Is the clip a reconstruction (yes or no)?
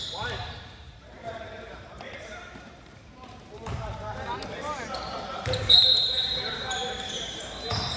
yes